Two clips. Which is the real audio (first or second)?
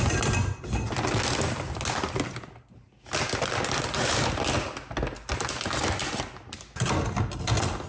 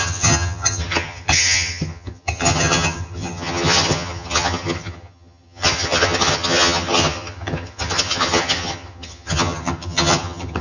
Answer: first